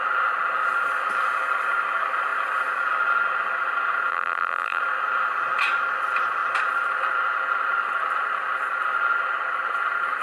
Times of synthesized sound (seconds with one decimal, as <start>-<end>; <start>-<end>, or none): 4.1-4.8

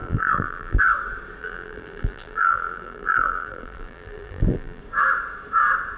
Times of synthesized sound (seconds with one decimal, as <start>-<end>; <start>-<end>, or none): 0.0-0.8; 1.4-4.8

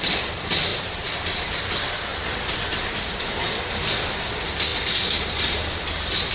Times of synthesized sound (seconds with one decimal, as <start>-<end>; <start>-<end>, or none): 0.7-1.7

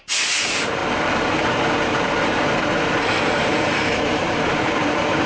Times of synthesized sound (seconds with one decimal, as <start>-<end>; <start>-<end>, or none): 0.0-5.3

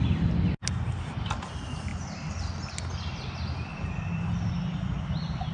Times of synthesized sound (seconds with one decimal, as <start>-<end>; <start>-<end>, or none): none

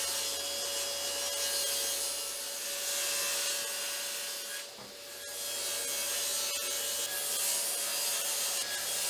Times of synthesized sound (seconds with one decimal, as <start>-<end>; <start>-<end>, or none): 7.9-8.7

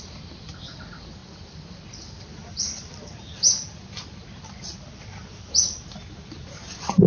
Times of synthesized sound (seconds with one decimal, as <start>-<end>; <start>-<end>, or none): 1.2-5.5

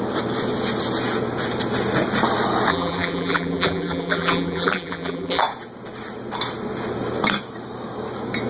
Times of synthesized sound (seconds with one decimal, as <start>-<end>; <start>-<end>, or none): 2.7-5.4